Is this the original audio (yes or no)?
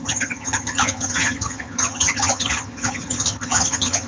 no